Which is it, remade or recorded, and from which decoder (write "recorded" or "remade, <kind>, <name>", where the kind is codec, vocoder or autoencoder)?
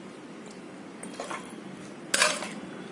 recorded